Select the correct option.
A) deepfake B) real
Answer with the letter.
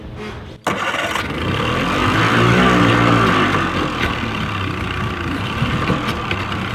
B